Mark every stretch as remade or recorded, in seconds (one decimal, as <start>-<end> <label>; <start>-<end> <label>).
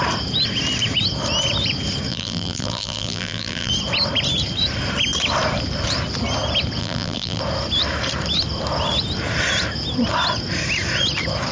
0.0-2.1 recorded; 2.1-3.7 remade; 3.7-6.8 recorded; 6.8-7.4 remade; 7.4-11.5 recorded